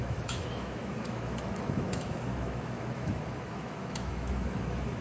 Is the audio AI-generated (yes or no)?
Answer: yes